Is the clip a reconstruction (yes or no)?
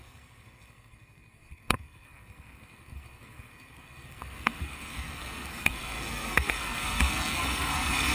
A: yes